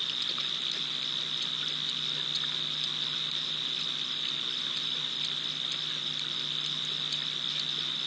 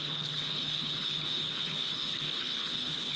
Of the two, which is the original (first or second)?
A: first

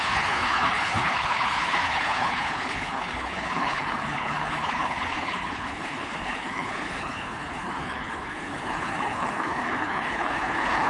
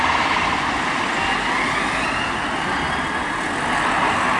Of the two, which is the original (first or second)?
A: second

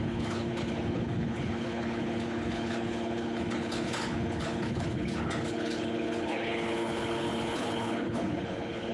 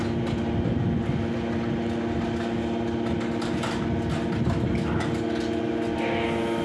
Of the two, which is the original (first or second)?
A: second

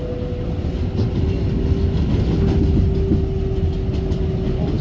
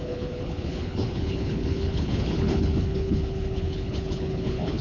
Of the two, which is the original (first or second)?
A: first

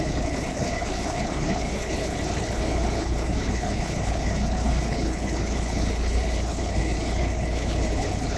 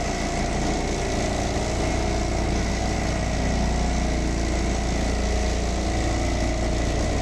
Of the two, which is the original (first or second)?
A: second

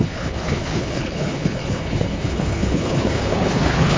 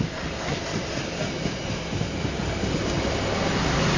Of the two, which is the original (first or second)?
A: second